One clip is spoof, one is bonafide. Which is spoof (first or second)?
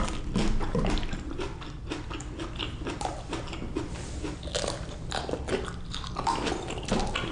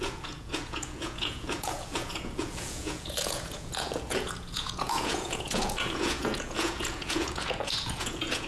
second